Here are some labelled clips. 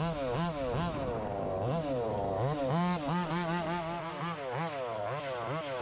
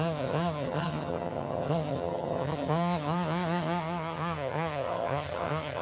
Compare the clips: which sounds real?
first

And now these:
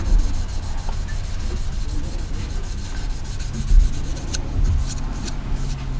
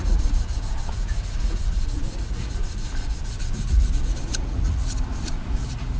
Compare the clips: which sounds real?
first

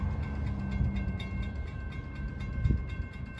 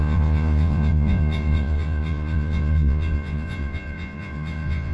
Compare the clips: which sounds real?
first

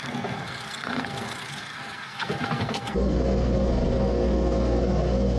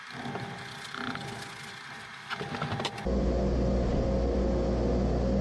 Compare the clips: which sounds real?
second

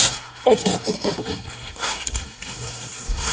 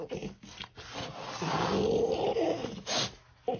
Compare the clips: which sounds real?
second